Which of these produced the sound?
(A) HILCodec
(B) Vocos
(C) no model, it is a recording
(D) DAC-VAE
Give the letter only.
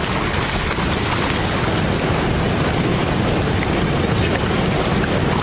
C